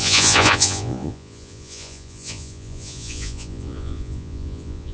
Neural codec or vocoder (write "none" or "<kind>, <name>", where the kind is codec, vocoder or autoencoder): vocoder, Vocos